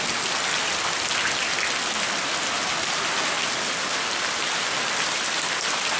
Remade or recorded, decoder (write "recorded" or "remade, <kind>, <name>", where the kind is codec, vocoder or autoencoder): recorded